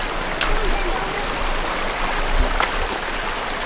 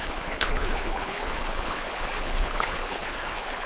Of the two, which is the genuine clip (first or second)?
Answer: first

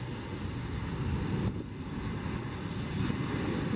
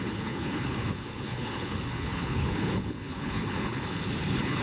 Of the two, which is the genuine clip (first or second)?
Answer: first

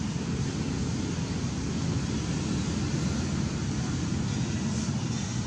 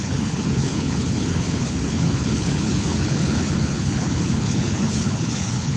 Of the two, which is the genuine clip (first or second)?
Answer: first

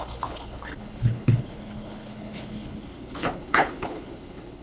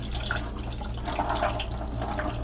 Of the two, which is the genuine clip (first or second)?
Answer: second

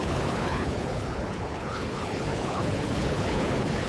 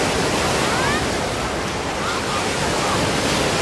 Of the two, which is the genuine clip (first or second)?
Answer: second